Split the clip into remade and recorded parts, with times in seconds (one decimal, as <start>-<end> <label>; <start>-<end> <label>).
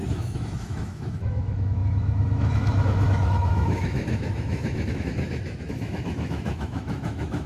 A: 0.0-7.5 remade